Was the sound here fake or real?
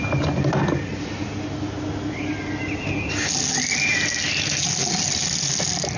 real